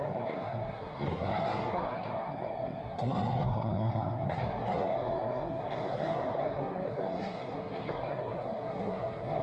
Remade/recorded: remade